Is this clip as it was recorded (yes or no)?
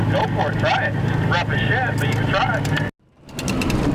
yes